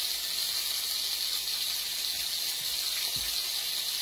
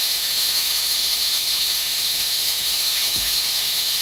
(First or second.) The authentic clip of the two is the first